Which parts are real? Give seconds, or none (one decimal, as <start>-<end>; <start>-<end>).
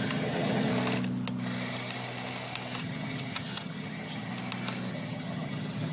0.7-2.8; 4.3-4.9